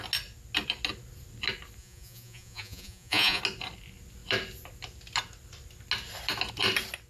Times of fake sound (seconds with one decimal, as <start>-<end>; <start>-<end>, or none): 1.8-3.4